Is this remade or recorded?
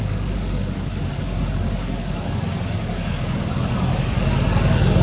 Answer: remade